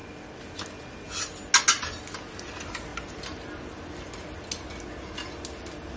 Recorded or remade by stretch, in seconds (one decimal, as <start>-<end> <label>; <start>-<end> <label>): 0.0-6.0 recorded